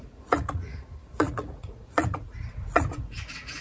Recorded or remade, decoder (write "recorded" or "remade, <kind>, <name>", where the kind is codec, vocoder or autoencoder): remade, vocoder, Vocos